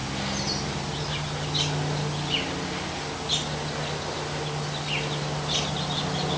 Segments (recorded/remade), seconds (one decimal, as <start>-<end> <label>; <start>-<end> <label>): 0.0-6.4 recorded